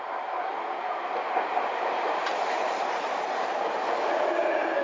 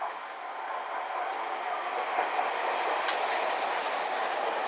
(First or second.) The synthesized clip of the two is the first